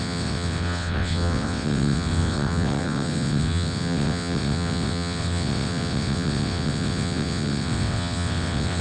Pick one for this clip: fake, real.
fake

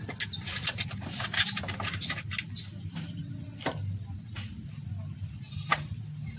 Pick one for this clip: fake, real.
real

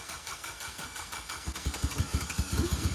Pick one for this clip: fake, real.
fake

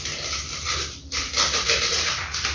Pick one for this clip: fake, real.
real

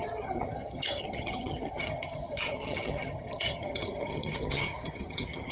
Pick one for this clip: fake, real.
fake